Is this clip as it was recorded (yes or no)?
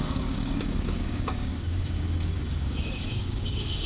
no